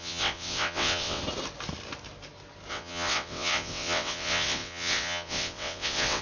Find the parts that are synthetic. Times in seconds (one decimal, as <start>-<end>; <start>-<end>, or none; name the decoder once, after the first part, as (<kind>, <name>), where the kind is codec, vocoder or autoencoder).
0.0-1.2 (vocoder, WaveNeXt); 2.7-6.2